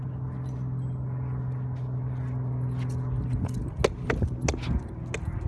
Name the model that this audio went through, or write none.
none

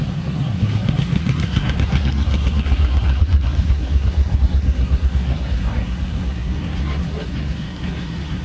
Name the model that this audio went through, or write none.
codec, SNAC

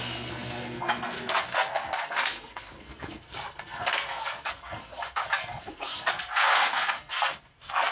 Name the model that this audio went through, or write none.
codec, SNAC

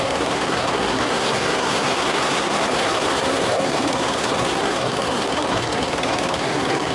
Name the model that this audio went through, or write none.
codec, SNAC